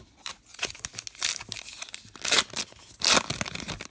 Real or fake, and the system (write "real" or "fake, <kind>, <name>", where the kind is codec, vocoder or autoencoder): real